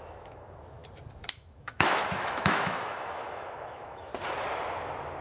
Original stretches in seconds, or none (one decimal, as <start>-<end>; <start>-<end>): 0.8-1.3; 4.1-5.2